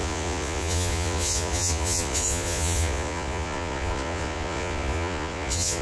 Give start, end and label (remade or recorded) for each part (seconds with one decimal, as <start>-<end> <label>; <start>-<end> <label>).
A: 0.0-5.8 remade